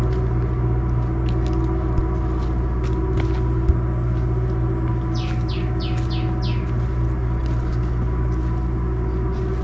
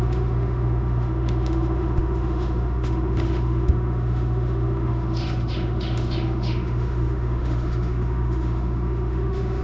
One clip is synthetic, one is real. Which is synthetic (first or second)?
second